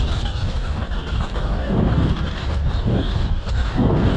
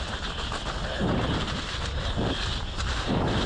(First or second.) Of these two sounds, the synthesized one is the first